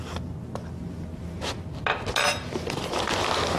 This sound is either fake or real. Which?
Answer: real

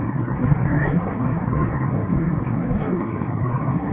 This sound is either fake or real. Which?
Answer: fake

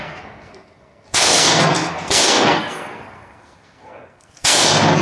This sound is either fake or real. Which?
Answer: fake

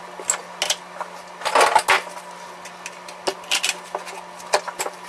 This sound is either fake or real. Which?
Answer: real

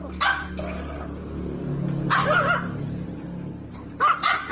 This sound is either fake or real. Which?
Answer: real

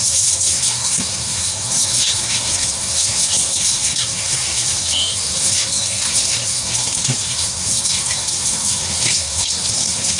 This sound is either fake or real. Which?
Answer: fake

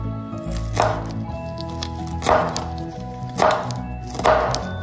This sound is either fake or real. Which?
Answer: real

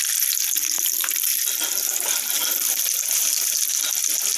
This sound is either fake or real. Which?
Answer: real